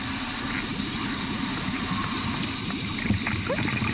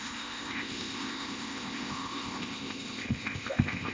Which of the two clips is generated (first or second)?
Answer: second